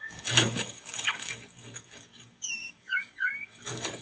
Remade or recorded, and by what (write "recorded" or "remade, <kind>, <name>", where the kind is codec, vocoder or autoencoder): remade, codec, DAC